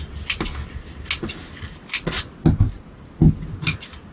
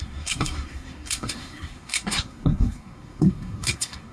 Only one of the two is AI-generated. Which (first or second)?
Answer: second